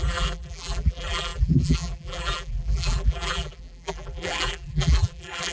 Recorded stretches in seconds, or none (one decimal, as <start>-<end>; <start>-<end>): none